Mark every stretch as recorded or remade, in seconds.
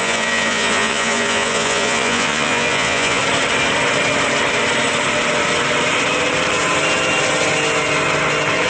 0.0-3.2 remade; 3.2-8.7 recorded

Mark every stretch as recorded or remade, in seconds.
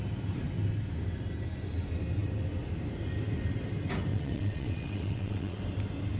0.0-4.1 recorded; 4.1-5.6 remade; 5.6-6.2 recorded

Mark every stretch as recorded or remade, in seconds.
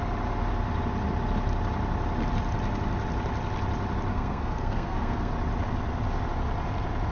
0.0-4.1 recorded; 4.1-5.3 remade; 5.3-7.1 recorded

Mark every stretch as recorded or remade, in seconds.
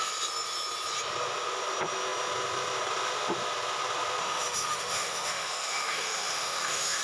0.0-4.2 recorded; 4.2-7.0 remade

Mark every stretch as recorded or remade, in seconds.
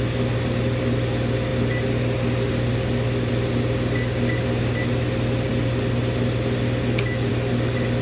0.0-8.0 recorded